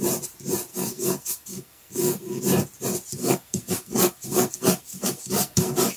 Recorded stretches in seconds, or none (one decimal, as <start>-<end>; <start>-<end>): 0.0-0.7; 2.4-3.2